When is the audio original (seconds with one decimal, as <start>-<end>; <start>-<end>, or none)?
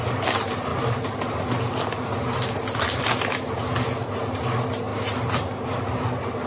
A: 0.0-6.5